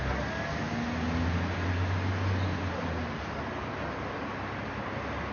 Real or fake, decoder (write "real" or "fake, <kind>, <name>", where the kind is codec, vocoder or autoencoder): real